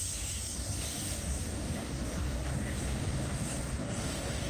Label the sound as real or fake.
fake